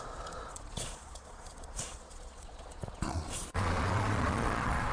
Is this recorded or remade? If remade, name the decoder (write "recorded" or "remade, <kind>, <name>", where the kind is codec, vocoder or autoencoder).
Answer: remade, vocoder, Vocos